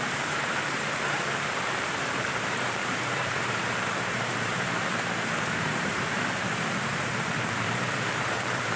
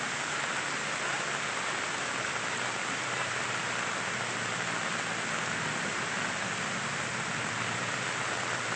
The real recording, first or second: second